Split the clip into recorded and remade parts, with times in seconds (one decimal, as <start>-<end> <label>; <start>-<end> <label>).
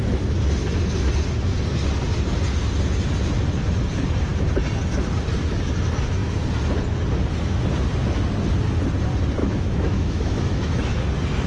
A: 0.0-9.4 recorded; 9.4-11.1 remade; 11.1-11.5 recorded